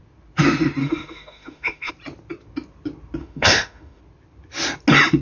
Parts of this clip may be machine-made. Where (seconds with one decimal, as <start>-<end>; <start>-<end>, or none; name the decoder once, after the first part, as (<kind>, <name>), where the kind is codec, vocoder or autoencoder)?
0.8-1.9 (autoencoder, DAC-VAE); 3.2-4.0